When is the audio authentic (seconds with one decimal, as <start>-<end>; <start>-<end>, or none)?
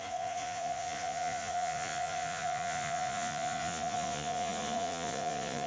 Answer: none